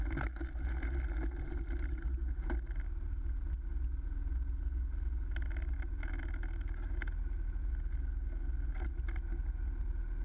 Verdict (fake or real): real